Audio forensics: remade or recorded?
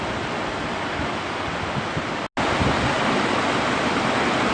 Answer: recorded